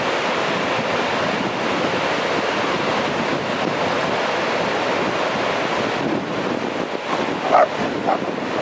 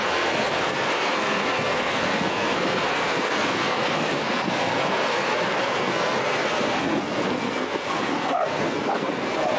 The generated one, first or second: second